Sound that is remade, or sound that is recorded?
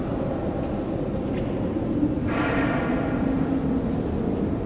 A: recorded